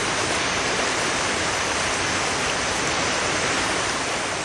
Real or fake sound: real